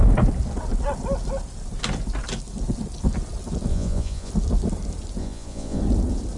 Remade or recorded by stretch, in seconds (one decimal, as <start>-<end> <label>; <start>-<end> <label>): 0.0-3.7 recorded; 3.7-4.3 remade; 4.3-5.2 recorded; 5.2-5.8 remade; 5.8-6.4 recorded

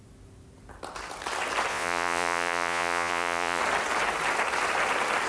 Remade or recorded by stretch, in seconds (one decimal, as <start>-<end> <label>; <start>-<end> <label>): 0.0-1.7 recorded; 1.7-3.6 remade; 3.6-5.3 recorded

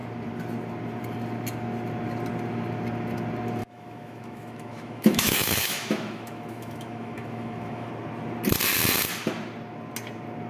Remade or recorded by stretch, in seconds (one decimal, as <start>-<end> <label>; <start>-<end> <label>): 0.0-3.6 recorded; 3.6-7.9 remade; 7.9-10.5 recorded

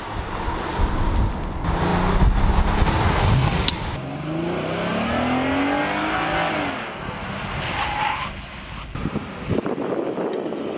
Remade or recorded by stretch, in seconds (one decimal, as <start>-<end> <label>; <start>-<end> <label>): 0.0-10.8 recorded